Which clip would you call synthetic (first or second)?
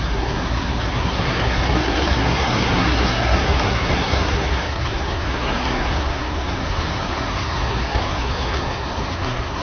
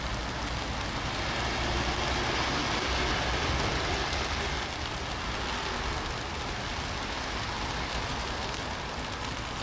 first